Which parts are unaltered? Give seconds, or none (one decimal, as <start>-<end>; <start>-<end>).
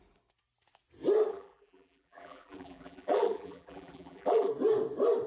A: 0.0-1.3; 4.5-5.3